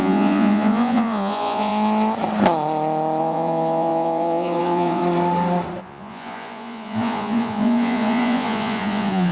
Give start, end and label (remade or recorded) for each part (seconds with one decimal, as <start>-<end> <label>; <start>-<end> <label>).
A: 0.0-1.7 remade; 1.7-3.2 recorded; 3.2-5.0 remade; 5.0-5.8 recorded; 5.8-9.3 remade